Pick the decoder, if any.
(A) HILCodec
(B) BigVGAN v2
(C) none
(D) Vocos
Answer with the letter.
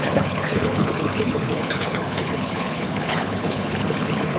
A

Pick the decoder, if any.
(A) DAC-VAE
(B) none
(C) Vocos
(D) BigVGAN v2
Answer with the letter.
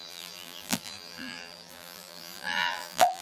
D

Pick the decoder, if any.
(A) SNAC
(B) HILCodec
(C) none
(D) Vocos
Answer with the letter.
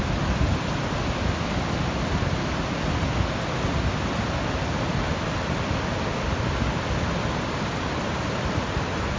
C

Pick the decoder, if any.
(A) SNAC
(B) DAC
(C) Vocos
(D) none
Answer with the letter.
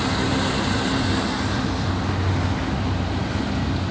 D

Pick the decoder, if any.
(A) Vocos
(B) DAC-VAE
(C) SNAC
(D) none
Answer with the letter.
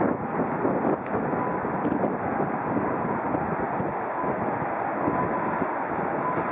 D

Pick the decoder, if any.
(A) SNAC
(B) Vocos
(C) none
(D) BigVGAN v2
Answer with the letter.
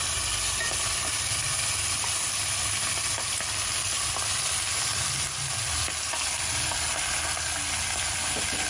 C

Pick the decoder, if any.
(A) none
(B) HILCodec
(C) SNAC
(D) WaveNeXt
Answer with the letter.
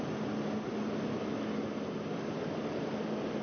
A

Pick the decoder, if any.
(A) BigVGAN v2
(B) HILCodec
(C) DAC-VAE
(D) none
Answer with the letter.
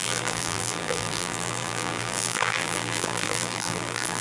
A